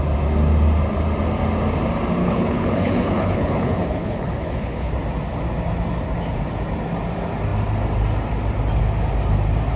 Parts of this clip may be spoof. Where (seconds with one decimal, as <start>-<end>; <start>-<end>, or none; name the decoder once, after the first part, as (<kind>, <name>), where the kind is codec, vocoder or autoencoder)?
2.2-4.9 (codec, HILCodec)